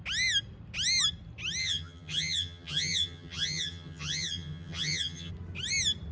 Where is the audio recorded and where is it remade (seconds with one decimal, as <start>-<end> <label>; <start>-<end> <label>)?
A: 0.0-1.6 recorded; 1.6-5.3 remade; 5.3-6.1 recorded